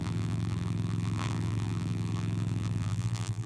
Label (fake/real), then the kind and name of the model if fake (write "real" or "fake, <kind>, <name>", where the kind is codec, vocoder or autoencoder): fake, vocoder, BigVGAN v2